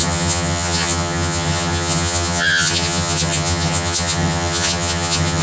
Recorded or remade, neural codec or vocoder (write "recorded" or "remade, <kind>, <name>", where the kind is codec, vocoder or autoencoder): remade, vocoder, HiFi-GAN